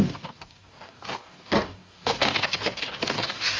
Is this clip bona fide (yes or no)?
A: no